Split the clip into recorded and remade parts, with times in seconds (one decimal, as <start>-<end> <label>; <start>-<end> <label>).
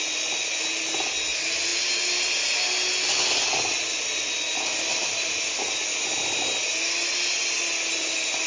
0.0-8.5 recorded